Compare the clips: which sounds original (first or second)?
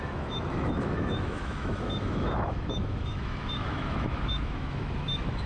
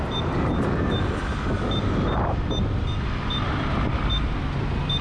second